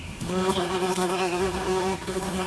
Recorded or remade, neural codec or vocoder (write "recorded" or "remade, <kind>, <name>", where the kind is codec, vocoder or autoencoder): remade, codec, SNAC